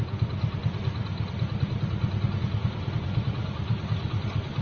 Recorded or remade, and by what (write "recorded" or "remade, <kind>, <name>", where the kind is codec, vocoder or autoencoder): recorded